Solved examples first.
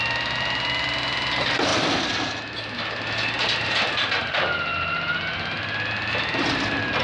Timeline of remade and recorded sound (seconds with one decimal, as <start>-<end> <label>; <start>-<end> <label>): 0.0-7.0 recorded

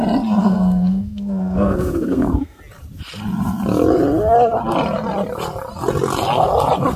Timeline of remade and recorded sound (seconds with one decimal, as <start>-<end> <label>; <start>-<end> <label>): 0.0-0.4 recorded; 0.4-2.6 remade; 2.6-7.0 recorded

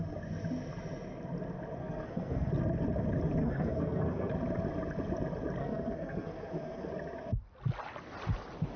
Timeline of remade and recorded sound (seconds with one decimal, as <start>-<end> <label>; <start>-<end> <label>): 0.0-1.8 recorded; 1.8-2.5 remade; 2.5-3.4 recorded; 3.4-4.3 remade; 4.3-5.6 recorded; 5.6-6.9 remade; 6.9-8.8 recorded

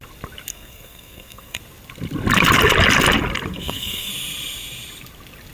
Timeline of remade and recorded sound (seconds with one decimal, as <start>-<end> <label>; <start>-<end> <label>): 0.0-0.5 recorded; 0.5-1.6 remade; 1.6-3.5 recorded; 3.5-4.1 remade; 4.1-5.5 recorded

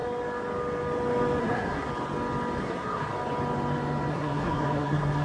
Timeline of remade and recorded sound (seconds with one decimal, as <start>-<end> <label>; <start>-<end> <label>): 0.0-1.4 recorded; 1.4-1.9 remade; 1.9-2.6 recorded; 2.6-3.1 remade; 3.1-4.1 recorded; 4.1-5.2 remade

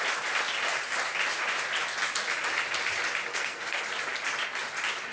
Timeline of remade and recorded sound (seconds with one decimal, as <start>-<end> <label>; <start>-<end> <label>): 0.0-3.3 recorded; 3.3-3.8 remade; 3.8-5.1 recorded

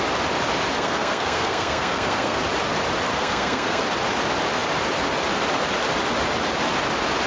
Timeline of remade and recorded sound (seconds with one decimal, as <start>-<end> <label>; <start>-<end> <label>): 0.0-0.7 recorded; 0.7-2.4 remade; 2.4-3.1 recorded; 3.1-3.8 remade; 3.8-7.3 recorded

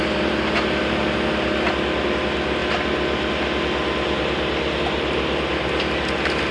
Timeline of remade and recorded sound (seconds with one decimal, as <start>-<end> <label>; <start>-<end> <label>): 0.0-6.5 recorded